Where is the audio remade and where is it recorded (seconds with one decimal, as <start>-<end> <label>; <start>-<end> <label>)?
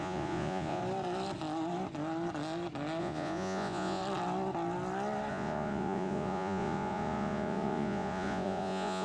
0.0-0.8 remade; 0.8-3.0 recorded; 3.0-4.0 remade; 4.0-5.3 recorded; 5.3-9.0 remade